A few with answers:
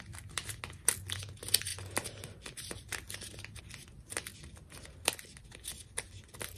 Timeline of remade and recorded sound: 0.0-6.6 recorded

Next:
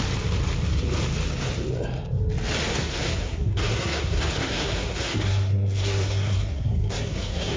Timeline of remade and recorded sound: 0.0-2.7 recorded; 2.7-7.6 remade

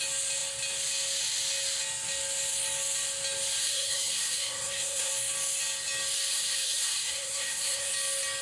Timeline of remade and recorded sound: 0.0-3.6 recorded; 3.6-5.1 remade; 5.1-6.3 recorded; 6.3-7.9 remade; 7.9-8.4 recorded

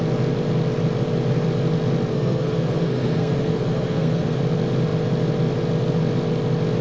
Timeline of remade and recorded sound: 0.0-2.1 recorded; 2.1-4.4 remade; 4.4-6.8 recorded

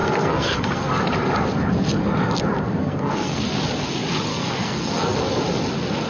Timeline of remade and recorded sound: 0.0-0.9 remade; 0.9-2.8 recorded; 2.8-3.4 remade; 3.4-4.3 recorded; 4.3-5.2 remade; 5.2-6.1 recorded

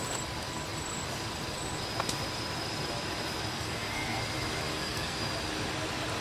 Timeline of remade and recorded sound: 0.0-3.5 recorded; 3.5-4.2 remade; 4.2-4.7 recorded; 4.7-5.2 remade; 5.2-6.2 recorded

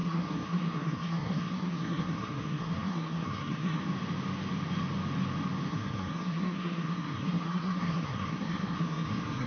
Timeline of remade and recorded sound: 0.0-3.8 remade; 3.8-5.7 recorded; 5.7-9.5 remade

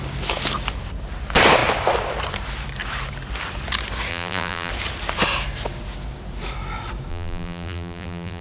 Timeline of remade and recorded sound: 0.0-4.1 recorded; 4.1-4.7 remade; 4.7-7.1 recorded; 7.1-8.4 remade